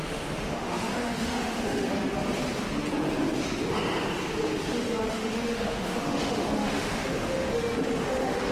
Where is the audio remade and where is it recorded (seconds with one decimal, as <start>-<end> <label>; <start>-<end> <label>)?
0.0-2.0 remade; 2.0-5.1 recorded; 5.1-8.5 remade